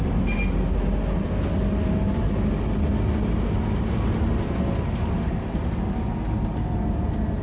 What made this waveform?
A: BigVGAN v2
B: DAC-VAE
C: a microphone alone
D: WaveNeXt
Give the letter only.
C